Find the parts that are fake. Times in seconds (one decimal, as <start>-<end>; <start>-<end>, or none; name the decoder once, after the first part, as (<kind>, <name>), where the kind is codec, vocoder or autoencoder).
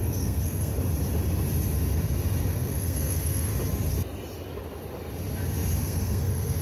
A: 0.0-0.7 (codec, SNAC); 2.5-3.5; 5.8-6.6